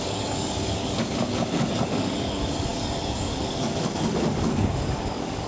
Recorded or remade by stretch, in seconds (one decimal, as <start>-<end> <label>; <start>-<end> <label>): 0.0-5.5 remade